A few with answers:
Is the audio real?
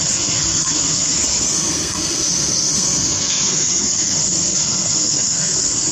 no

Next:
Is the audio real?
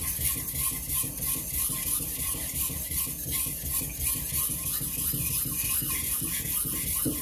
yes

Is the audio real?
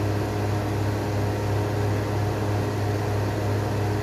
yes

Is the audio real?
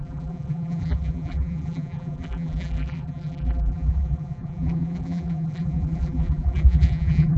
no